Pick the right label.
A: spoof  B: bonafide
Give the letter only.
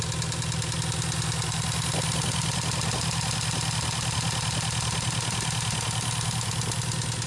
B